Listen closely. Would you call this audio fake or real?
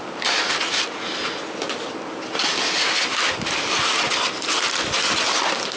real